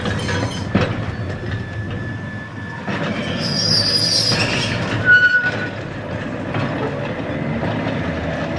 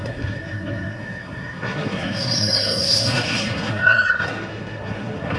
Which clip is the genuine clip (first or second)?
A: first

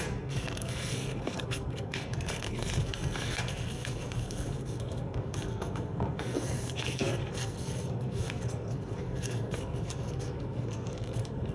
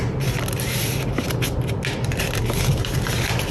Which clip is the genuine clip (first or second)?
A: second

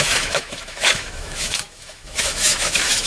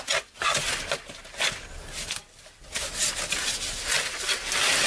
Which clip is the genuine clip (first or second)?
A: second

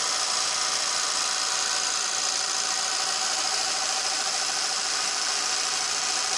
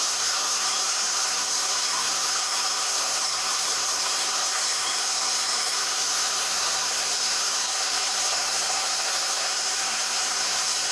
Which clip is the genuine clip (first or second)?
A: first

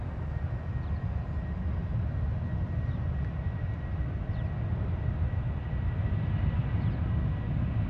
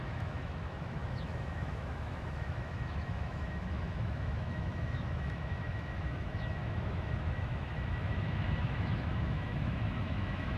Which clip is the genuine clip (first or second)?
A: first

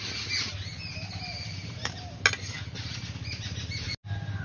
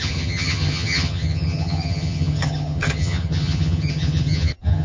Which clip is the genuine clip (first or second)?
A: first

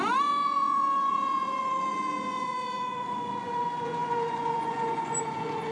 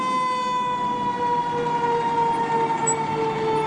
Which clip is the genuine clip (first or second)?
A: second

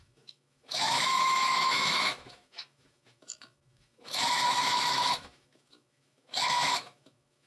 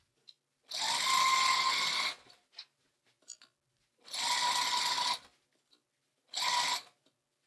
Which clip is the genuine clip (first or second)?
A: second